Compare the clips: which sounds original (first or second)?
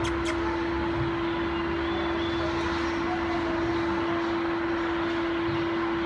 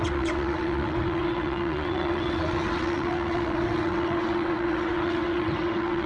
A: first